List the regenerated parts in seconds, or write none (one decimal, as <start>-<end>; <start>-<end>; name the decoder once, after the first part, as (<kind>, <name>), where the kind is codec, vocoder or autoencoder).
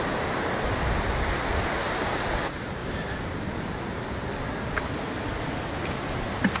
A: none